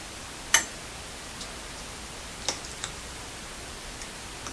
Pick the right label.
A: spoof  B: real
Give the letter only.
B